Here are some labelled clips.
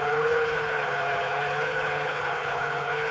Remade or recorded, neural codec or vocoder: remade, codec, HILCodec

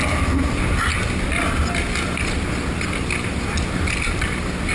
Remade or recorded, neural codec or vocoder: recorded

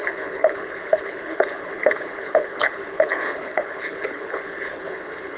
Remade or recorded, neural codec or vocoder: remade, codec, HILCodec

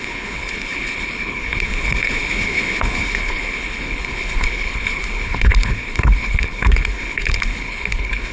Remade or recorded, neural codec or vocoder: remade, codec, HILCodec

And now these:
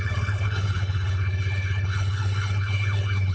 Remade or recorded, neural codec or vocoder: remade, codec, HILCodec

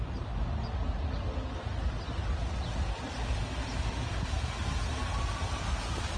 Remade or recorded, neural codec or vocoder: recorded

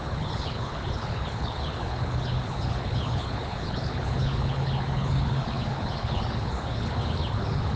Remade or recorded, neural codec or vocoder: remade, codec, HILCodec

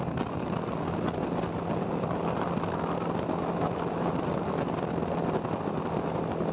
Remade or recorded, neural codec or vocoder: recorded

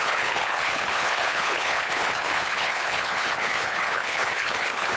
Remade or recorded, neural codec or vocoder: remade, codec, HILCodec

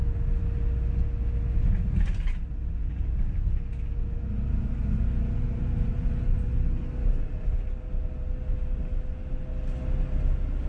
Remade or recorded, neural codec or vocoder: recorded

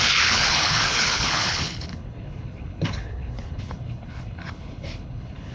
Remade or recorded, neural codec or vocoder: remade, codec, HILCodec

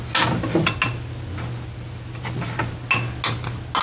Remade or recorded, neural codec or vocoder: recorded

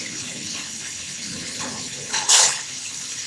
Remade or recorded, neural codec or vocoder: remade, codec, HILCodec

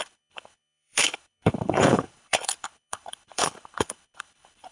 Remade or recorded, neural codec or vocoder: remade, codec, HILCodec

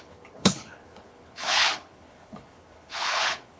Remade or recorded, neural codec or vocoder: remade, codec, HILCodec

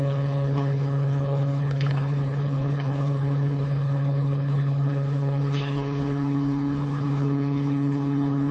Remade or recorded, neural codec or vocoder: remade, codec, HILCodec